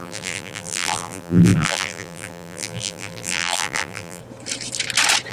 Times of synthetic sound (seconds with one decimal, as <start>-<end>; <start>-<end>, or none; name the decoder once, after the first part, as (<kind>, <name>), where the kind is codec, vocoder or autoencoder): 0.0-4.2 (vocoder, BigVGAN v2)

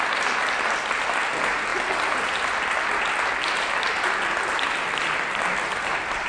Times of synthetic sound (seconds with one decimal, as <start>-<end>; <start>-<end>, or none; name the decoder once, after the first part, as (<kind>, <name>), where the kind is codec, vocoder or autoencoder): none

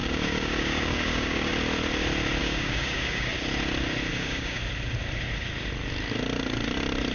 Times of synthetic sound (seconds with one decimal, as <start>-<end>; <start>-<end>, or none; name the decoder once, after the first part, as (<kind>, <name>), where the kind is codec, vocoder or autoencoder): 0.0-1.5 (codec, DAC); 2.4-3.3; 4.1-4.6

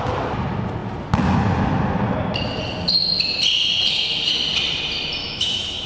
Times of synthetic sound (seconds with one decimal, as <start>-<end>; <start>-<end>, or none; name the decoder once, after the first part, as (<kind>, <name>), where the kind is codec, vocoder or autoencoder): 5.2-5.9 (autoencoder, DAC-VAE)